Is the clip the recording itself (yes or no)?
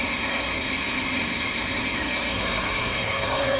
no